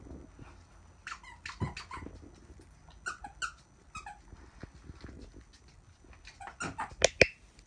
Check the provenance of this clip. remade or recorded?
recorded